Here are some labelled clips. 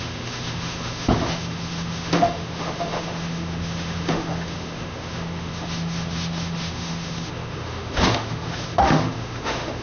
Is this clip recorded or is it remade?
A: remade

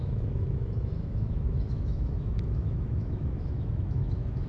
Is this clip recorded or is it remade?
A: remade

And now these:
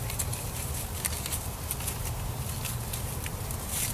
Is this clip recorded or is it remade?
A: recorded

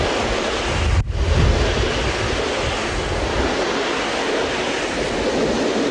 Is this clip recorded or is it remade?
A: recorded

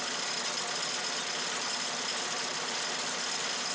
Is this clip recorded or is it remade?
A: recorded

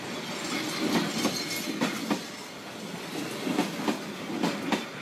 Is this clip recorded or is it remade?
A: recorded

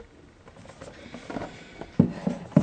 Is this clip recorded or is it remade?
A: recorded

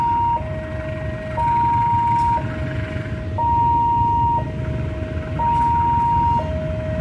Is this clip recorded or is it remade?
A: recorded